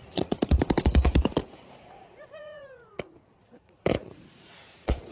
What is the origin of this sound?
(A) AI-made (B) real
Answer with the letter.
A